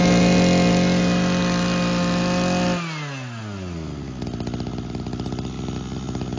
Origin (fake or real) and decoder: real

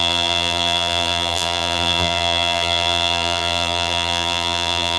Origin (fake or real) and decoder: fake, vocoder, BigVGAN v2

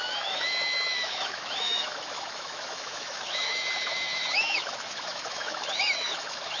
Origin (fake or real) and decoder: fake, autoencoder, DAC-VAE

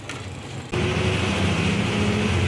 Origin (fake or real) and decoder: real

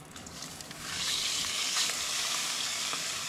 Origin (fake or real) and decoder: fake, codec, DAC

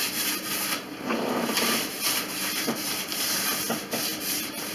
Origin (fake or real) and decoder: fake, vocoder, BigVGAN v2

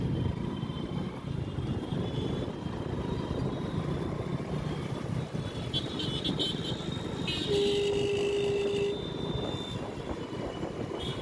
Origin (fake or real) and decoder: real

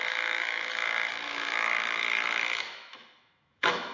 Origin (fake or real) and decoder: fake, autoencoder, DAC-VAE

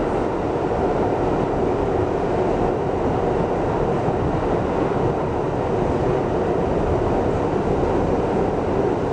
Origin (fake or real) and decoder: real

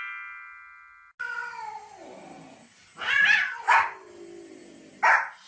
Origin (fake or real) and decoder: real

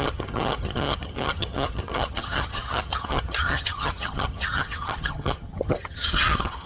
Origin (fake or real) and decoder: fake, vocoder, HiFi-GAN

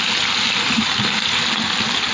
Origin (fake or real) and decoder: real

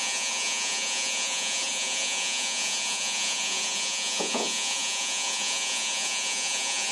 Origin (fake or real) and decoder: fake, vocoder, Vocos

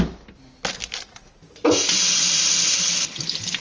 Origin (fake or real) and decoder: real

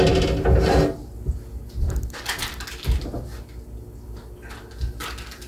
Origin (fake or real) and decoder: real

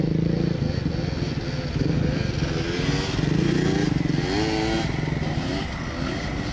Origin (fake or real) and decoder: real